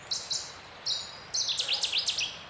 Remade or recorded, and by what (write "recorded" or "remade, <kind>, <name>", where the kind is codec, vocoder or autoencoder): recorded